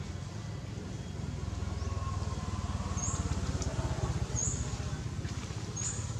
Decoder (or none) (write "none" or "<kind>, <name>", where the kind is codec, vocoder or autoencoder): none